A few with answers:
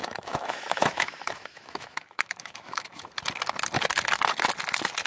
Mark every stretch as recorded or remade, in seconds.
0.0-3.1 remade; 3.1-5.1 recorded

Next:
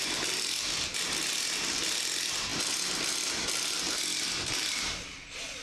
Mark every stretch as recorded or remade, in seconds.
0.0-5.6 recorded

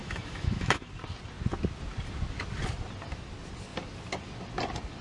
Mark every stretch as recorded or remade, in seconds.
0.0-0.9 remade; 0.9-5.0 recorded

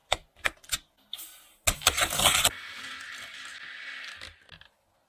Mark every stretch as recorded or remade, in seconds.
0.0-5.1 recorded

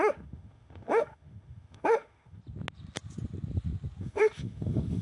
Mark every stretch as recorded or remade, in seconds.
0.0-2.4 remade; 2.4-4.0 recorded; 4.0-5.0 remade

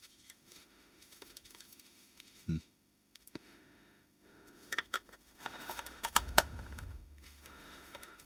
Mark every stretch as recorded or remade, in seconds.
0.0-8.3 remade